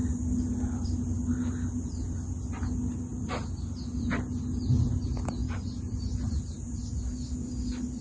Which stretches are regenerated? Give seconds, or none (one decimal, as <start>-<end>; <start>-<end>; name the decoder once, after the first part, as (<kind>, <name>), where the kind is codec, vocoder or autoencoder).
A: none